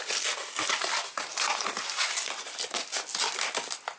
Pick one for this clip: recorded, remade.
recorded